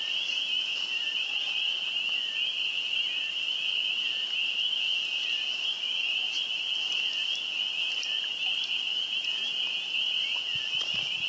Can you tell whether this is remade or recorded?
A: recorded